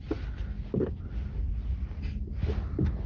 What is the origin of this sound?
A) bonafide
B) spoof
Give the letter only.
A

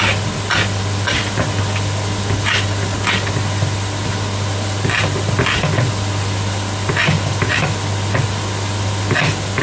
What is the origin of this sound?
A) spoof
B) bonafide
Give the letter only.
B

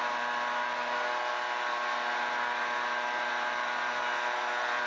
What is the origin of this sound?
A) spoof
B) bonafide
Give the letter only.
B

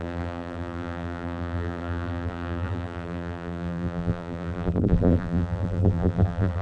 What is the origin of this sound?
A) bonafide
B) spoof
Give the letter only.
B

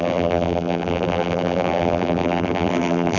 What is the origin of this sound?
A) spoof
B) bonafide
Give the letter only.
A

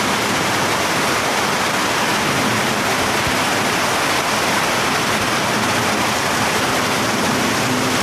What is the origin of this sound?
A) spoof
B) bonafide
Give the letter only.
B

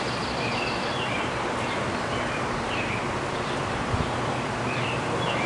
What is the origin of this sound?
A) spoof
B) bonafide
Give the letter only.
A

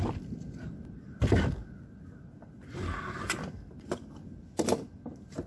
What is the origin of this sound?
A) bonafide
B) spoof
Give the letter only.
A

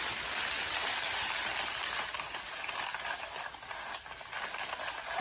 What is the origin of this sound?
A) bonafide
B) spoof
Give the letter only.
A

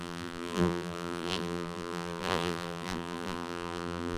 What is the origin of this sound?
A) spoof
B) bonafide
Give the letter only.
A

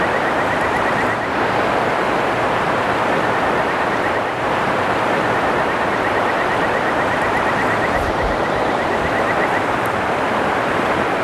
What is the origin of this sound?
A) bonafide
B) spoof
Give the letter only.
B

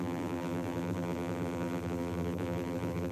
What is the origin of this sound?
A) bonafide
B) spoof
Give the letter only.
B